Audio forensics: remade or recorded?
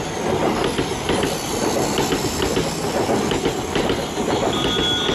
recorded